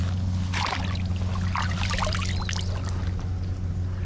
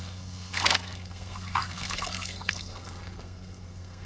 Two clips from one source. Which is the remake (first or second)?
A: second